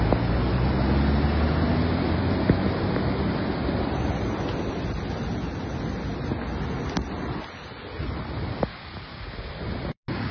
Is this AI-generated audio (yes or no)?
no